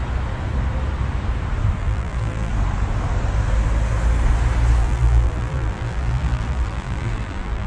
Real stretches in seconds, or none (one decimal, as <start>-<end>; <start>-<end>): 0.0-1.8; 2.5-4.8